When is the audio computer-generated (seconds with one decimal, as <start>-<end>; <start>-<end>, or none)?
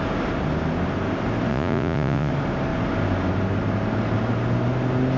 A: 1.5-2.3